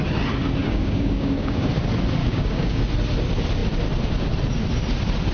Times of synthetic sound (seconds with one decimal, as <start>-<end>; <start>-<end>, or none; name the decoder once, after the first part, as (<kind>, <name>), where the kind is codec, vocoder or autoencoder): 0.6-1.7 (codec, DAC); 2.2-2.8

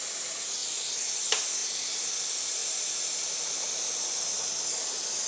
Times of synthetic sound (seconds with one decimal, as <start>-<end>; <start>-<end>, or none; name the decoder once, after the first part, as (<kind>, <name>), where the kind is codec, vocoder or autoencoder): none

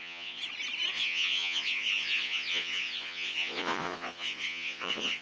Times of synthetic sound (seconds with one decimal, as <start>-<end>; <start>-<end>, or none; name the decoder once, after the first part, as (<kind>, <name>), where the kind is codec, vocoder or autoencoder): 0.0-0.4 (vocoder, Vocos); 0.9-5.2

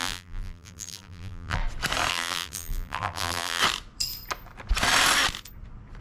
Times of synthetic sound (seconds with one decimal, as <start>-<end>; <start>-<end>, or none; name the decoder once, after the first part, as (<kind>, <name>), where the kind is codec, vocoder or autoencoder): 0.0-1.6 (vocoder, BigVGAN v2); 2.1-3.6